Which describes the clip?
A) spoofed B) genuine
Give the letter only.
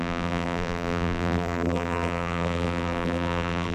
A